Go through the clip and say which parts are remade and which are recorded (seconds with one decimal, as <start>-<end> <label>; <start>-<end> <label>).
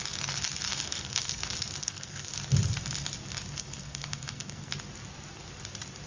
0.0-0.7 recorded; 0.7-1.4 remade; 1.4-1.8 recorded; 1.8-2.3 remade; 2.3-3.6 recorded; 3.6-4.7 remade; 4.7-6.1 recorded